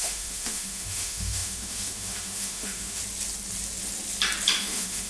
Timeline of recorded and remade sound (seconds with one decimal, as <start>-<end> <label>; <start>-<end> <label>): 0.0-3.0 remade; 3.0-4.6 recorded; 4.6-5.1 remade